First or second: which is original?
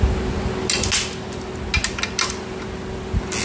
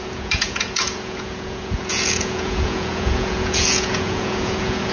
first